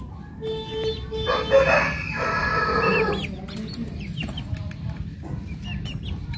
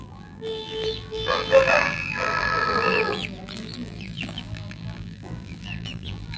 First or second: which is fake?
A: second